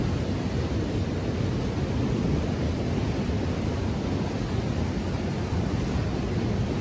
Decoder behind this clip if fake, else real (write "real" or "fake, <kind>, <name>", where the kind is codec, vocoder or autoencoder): real